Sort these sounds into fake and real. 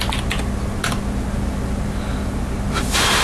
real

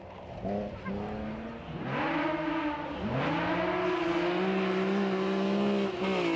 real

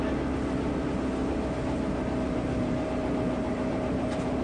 real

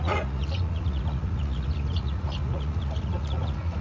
fake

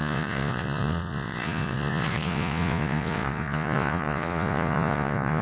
fake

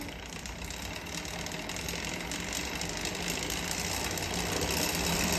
real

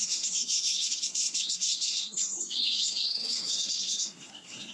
fake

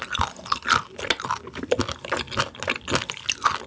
real